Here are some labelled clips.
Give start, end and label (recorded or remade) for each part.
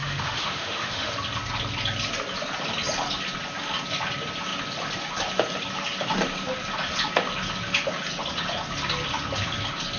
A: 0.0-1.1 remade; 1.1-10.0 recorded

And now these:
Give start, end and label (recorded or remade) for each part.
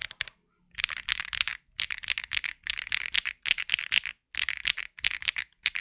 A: 0.0-5.8 recorded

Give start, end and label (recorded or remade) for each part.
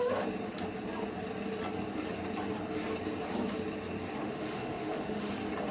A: 0.0-4.2 recorded; 4.2-5.3 remade; 5.3-5.7 recorded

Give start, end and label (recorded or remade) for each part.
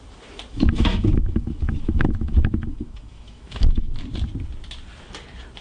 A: 0.0-0.5 recorded; 0.5-3.9 remade; 3.9-5.6 recorded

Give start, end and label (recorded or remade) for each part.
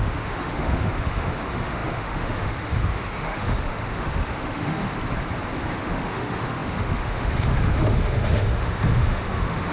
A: 0.0-5.0 remade; 5.0-5.7 recorded; 5.7-9.7 remade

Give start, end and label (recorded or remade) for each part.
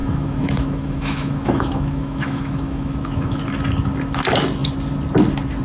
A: 0.0-3.4 remade; 3.4-5.6 recorded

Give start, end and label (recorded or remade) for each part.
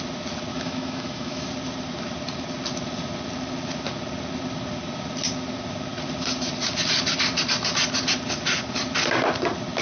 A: 0.0-0.5 recorded; 0.5-1.5 remade; 1.5-9.8 recorded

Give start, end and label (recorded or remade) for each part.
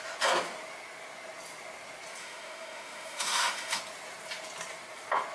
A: 0.0-2.2 recorded; 2.2-3.8 remade; 3.8-5.3 recorded